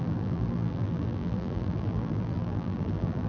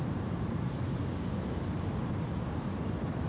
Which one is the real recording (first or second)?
second